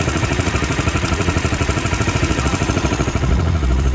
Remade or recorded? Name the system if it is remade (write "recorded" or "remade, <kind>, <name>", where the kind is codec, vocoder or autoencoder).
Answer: remade, vocoder, Vocos